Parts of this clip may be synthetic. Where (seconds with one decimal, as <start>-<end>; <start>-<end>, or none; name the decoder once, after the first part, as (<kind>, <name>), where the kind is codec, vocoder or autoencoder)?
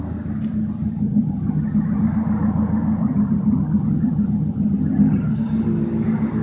1.0-2.0 (vocoder, HiFi-GAN); 3.0-5.3